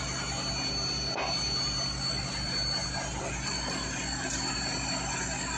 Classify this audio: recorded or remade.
recorded